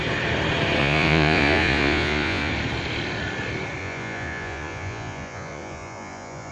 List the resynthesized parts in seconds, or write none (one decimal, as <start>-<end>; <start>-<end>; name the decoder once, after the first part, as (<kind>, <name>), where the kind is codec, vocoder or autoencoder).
0.8-2.5 (vocoder, Vocos); 3.8-6.5